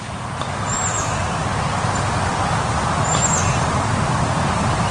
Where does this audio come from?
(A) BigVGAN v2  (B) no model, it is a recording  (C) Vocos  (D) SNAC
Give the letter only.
B